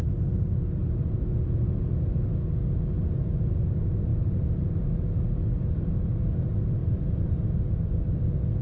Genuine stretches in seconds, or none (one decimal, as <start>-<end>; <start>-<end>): 0.0-4.1; 4.7-6.8; 7.9-8.6